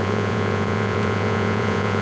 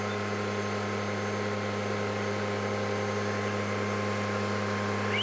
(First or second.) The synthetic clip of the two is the first